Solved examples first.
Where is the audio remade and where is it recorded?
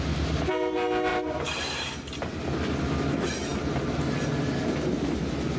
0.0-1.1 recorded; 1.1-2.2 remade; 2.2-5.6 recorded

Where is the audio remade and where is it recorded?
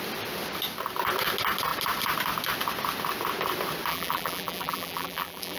0.0-3.9 recorded; 3.9-5.6 remade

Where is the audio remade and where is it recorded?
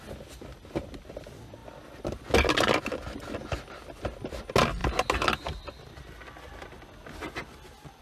0.0-8.0 recorded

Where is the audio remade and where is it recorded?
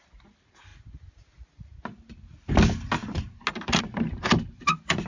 0.0-0.7 remade; 0.7-3.8 recorded; 3.8-5.1 remade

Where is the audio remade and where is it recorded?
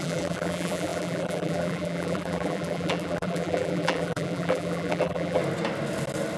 0.0-5.4 remade; 5.4-6.4 recorded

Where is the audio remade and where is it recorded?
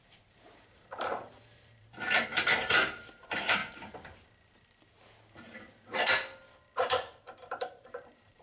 0.0-2.3 remade; 2.3-2.9 recorded; 2.9-3.6 remade; 3.6-6.8 recorded; 6.8-8.4 remade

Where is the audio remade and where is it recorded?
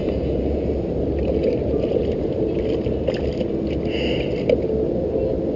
0.0-3.4 remade; 3.4-5.6 recorded